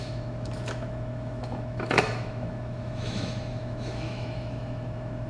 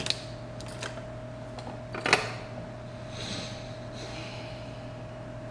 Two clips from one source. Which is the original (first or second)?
second